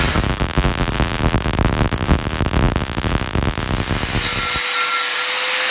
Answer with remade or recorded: recorded